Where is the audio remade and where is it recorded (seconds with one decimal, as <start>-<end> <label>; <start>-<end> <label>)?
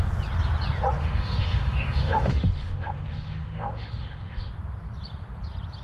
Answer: 0.0-1.0 recorded; 1.0-4.5 remade; 4.5-5.8 recorded